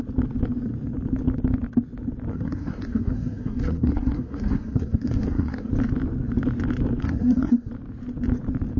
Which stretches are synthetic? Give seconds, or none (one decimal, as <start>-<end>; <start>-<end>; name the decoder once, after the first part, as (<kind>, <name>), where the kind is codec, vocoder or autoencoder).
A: 2.3-5.7 (codec, SNAC); 7.0-7.7